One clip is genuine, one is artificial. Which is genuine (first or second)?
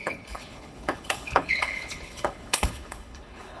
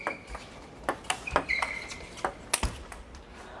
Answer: second